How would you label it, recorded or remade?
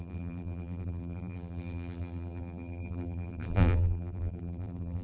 remade